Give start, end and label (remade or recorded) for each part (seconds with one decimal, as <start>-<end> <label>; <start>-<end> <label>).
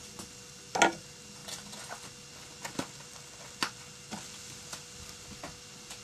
0.0-6.0 recorded